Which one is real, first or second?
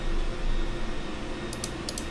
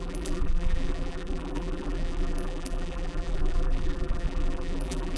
first